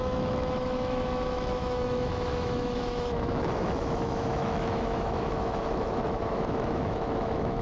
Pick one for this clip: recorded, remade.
remade